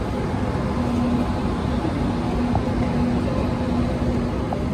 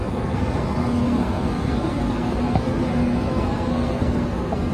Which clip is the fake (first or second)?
second